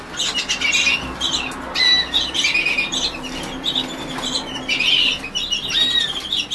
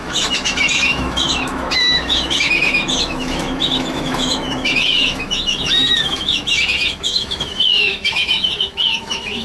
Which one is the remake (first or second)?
second